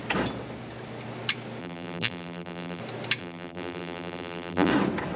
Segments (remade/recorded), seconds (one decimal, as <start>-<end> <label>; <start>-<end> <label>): 0.0-1.6 recorded; 1.6-2.8 remade; 2.8-3.2 recorded; 3.2-4.7 remade; 4.7-5.2 recorded